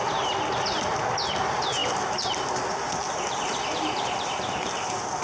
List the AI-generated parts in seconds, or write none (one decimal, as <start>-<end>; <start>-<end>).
none